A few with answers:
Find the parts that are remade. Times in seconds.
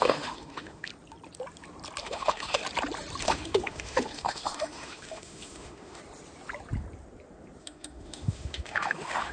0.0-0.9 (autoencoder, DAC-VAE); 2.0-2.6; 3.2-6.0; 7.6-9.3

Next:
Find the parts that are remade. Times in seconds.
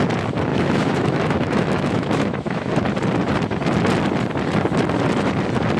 0.5-2.7 (autoencoder, DAC-VAE)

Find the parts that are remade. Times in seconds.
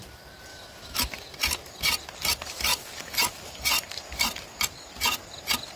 0.5-1.1 (autoencoder, DAC-VAE)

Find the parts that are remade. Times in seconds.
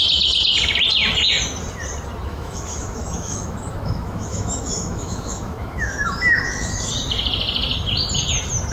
2.3-6.9 (autoencoder, DAC-VAE)